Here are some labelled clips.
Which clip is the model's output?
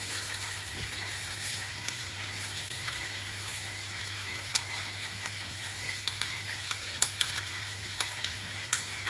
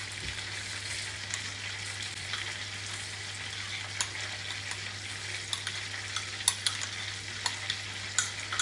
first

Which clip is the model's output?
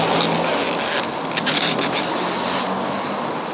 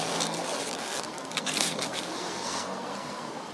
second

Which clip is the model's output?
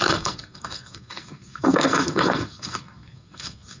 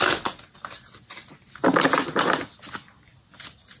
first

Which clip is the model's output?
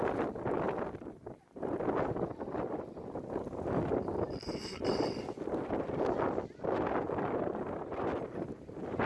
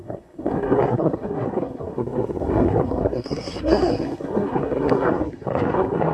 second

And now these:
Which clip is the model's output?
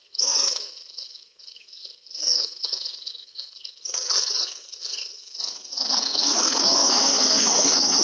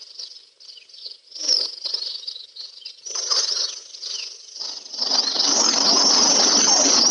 first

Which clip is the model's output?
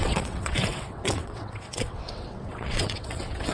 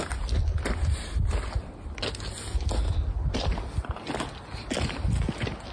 first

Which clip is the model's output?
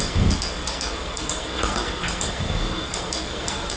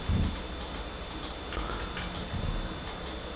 first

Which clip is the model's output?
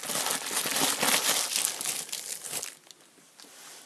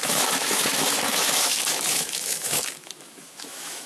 second